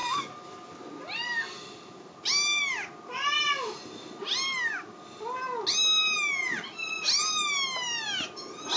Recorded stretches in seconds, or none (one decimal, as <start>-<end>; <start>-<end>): 0.0-8.8